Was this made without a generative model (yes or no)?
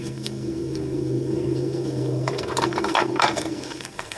no